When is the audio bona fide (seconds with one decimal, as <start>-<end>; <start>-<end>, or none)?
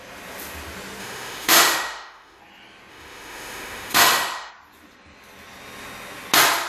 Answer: 0.0-1.0; 2.4-2.9; 4.5-6.7